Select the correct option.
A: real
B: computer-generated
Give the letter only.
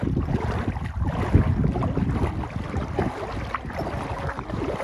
A